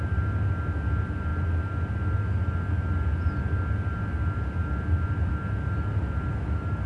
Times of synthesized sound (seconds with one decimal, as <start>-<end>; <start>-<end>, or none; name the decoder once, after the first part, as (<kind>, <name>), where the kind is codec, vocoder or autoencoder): none